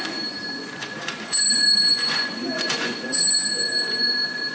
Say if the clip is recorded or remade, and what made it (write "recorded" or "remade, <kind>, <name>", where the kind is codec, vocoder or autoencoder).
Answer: remade, vocoder, Vocos